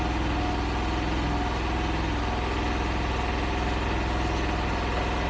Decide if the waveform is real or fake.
real